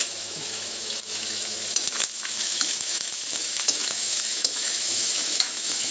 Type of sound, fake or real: fake